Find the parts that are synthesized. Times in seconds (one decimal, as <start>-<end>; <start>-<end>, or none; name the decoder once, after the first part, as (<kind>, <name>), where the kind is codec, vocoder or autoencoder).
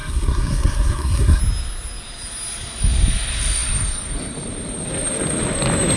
0.0-1.4 (codec, SNAC)